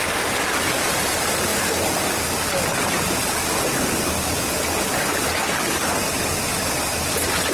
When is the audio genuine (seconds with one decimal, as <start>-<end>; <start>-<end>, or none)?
0.0-7.5